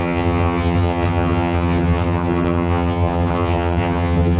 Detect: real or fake fake